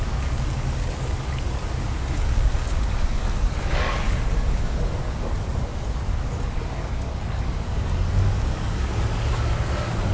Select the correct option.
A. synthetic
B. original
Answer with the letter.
A